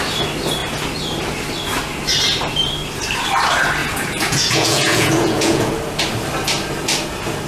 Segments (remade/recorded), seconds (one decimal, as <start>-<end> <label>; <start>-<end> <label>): 0.0-3.8 recorded; 3.8-5.7 remade; 5.7-7.5 recorded